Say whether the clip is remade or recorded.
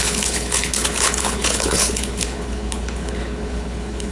remade